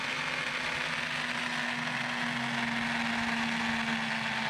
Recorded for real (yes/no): yes